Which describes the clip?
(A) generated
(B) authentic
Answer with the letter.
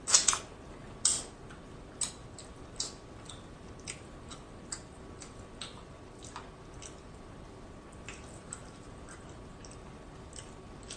B